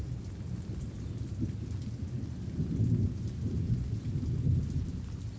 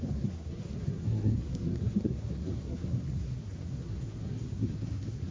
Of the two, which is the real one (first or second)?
first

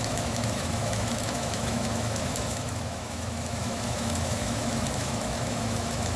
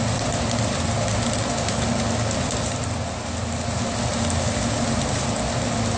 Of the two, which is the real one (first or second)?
second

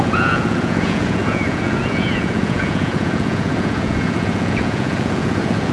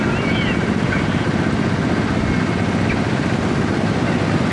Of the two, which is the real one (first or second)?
second